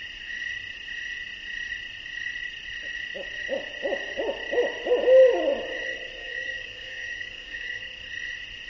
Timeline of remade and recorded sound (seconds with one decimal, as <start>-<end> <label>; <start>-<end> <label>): 0.0-6.2 recorded; 6.2-7.9 remade; 7.9-8.7 recorded